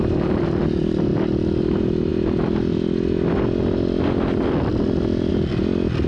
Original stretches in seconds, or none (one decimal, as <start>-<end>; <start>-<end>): 0.0-6.1